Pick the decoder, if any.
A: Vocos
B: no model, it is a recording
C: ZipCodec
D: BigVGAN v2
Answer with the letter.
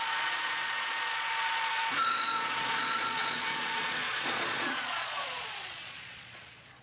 A